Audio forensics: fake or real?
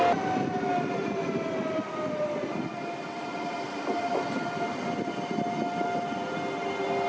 real